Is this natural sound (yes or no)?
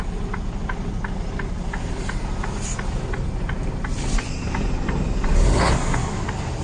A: yes